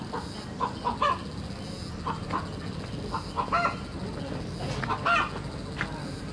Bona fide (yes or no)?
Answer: yes